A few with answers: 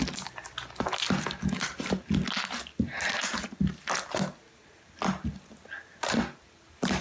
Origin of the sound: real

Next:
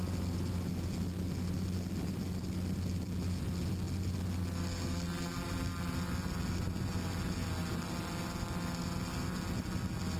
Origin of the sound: real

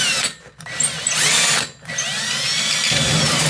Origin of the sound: fake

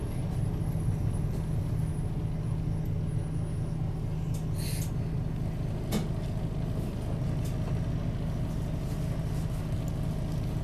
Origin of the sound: real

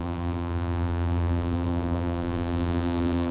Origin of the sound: fake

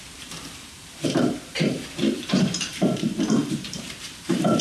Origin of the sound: fake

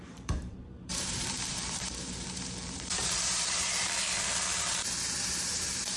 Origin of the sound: fake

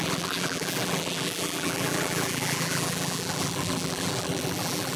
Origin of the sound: fake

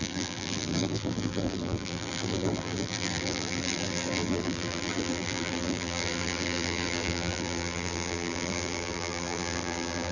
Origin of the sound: fake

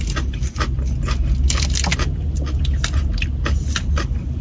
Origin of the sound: real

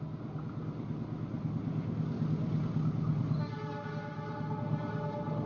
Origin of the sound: real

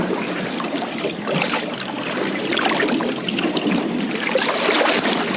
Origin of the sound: real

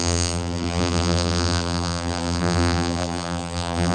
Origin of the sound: fake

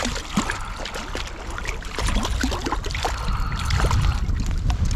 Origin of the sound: real